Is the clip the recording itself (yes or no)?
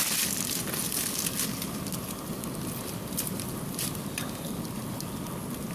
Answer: yes